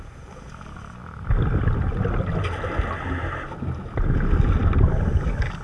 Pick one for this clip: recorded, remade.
recorded